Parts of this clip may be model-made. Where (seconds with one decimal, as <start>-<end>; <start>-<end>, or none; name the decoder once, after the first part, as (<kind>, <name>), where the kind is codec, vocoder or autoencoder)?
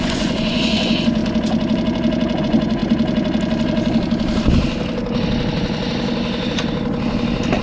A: 0.0-1.2 (vocoder, Vocos); 2.4-2.8